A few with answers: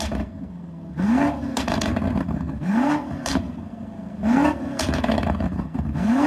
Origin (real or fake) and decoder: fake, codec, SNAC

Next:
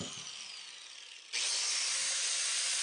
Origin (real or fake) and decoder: real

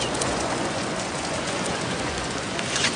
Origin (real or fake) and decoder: fake, vocoder, Vocos